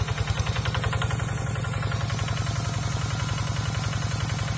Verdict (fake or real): real